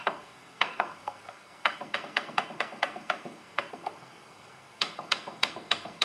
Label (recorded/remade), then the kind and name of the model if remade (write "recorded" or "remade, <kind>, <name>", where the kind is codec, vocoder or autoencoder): remade, codec, SNAC